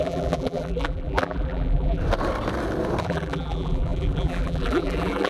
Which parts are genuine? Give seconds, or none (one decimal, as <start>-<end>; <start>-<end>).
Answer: 2.0-3.0

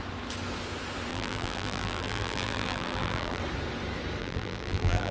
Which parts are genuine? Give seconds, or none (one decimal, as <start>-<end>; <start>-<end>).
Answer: 0.0-1.1; 3.4-4.2

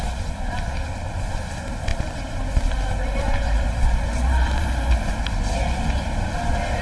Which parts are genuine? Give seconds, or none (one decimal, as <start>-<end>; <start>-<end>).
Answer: 0.0-1.9; 4.9-6.8